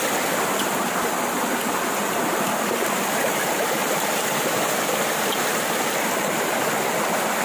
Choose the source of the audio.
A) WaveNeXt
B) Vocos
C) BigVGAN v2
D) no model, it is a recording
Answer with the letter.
D